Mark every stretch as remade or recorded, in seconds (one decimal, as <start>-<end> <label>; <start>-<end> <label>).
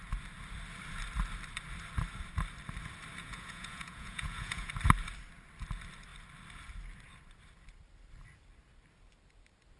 0.0-3.2 recorded; 3.2-4.7 remade; 4.7-9.8 recorded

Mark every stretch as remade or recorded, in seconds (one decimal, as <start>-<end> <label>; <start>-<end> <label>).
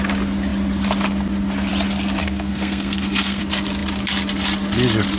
0.0-2.2 recorded; 2.2-3.4 remade; 3.4-5.2 recorded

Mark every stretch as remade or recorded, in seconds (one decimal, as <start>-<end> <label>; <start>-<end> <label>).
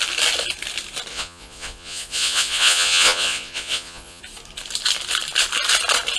0.0-1.1 recorded; 1.1-4.2 remade; 4.2-6.2 recorded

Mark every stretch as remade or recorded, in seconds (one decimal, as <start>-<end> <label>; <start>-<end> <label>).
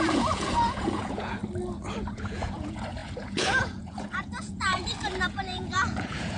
0.0-1.4 remade; 1.4-2.0 recorded; 2.0-4.7 remade; 4.7-5.3 recorded; 5.3-6.4 remade